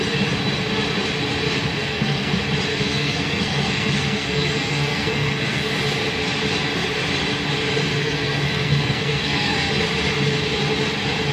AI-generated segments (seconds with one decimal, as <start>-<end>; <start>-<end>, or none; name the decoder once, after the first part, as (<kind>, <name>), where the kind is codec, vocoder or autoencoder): 1.8-2.3 (codec, SNAC); 2.7-5.7; 7.9-9.7